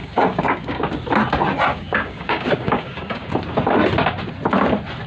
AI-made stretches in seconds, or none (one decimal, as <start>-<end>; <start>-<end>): 0.0-0.9; 1.7-3.3